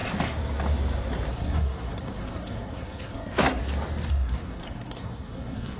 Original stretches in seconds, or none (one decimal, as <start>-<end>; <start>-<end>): 0.0-1.3; 3.6-4.1